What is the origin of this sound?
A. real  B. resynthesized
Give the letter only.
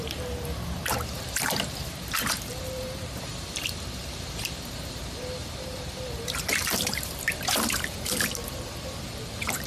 B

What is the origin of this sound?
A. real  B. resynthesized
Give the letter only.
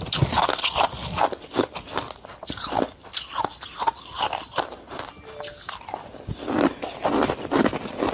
A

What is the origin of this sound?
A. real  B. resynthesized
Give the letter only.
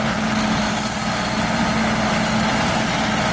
A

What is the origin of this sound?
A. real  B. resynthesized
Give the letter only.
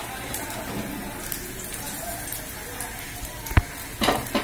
A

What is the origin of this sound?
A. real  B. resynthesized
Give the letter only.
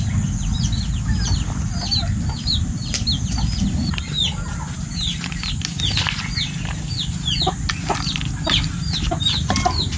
A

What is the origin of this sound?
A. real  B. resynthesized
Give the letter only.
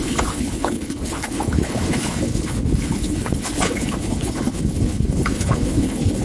B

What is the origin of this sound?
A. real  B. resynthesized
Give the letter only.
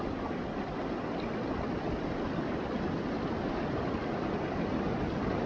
A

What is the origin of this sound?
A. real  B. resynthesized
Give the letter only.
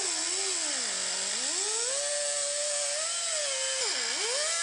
A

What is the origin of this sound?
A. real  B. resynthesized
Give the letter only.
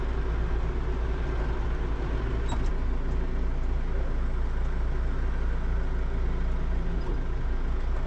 A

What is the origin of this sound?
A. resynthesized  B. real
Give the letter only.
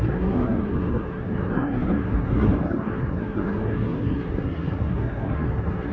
A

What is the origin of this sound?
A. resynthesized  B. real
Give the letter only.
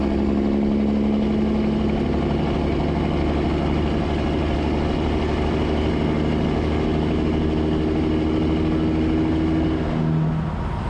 B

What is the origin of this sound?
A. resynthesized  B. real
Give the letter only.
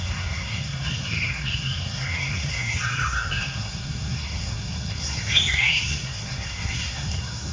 A